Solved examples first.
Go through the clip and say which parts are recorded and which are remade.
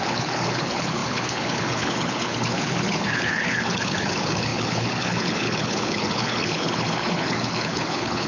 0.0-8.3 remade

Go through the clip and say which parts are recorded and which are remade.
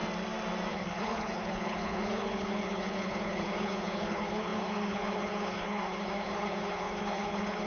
0.0-0.7 recorded; 0.7-7.7 remade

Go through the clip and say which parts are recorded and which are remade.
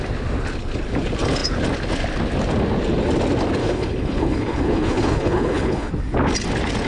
0.0-3.6 recorded; 3.6-5.9 remade; 5.9-6.9 recorded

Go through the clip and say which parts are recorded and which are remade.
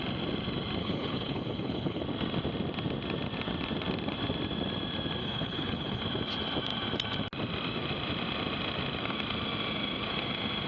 0.0-0.8 recorded; 0.8-2.0 remade; 2.0-5.2 recorded; 5.2-6.0 remade; 6.0-10.7 recorded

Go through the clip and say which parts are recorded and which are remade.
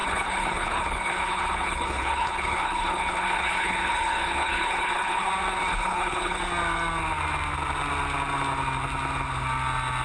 0.0-5.3 remade; 5.3-5.7 recorded; 5.7-6.4 remade; 6.4-10.0 recorded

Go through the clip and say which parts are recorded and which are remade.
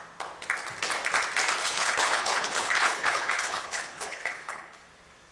0.0-1.6 recorded; 1.6-4.8 remade; 4.8-5.3 recorded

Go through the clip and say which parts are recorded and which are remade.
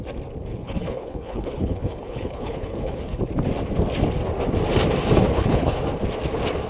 0.0-0.5 recorded; 0.5-3.2 remade; 3.2-5.3 recorded; 5.3-5.8 remade; 5.8-6.7 recorded